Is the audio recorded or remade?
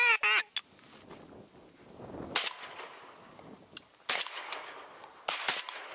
recorded